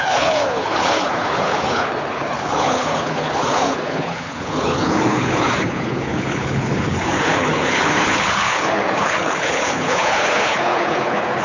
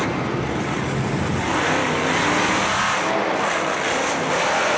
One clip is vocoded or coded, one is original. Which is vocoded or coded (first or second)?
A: first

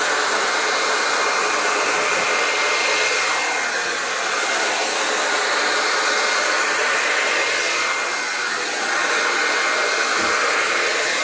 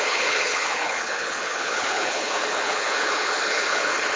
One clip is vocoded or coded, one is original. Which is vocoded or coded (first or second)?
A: second